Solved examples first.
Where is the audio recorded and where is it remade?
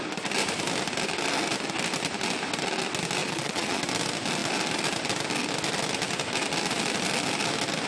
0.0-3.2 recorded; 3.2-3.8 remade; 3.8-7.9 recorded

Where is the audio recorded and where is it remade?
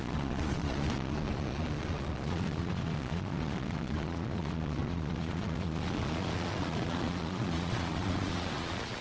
0.0-9.0 remade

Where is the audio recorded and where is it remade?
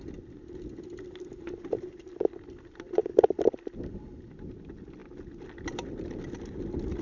0.0-7.0 recorded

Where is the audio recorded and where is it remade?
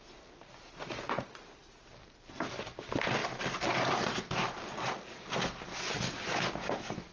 0.0-0.8 recorded; 0.8-1.4 remade; 1.4-7.1 recorded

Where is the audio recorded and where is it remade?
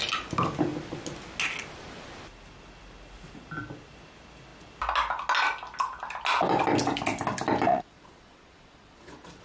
0.0-7.7 recorded; 7.7-9.4 remade